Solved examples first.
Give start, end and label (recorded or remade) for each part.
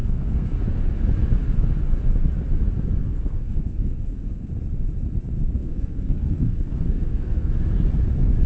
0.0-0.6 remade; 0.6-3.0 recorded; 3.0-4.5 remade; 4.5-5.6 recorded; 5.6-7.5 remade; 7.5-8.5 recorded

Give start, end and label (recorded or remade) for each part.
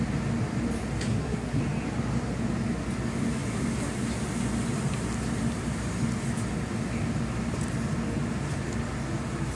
0.0-1.1 recorded; 1.1-1.6 remade; 1.6-9.5 recorded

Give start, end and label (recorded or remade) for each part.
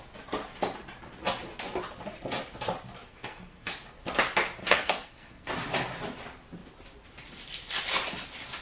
0.0-3.1 recorded; 3.1-3.7 remade; 3.7-4.6 recorded; 4.6-5.5 remade; 5.5-8.6 recorded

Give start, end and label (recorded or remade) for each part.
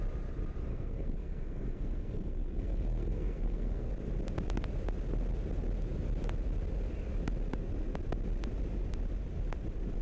0.0-0.7 recorded; 0.7-3.9 remade; 3.9-10.0 recorded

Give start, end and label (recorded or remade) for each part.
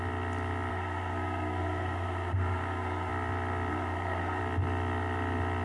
0.0-0.7 recorded; 0.7-3.1 remade; 3.1-3.7 recorded; 3.7-4.4 remade; 4.4-5.6 recorded